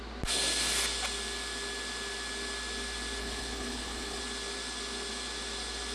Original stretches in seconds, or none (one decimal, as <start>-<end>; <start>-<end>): 0.0-3.2; 4.2-5.9